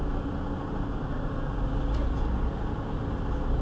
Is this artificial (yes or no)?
no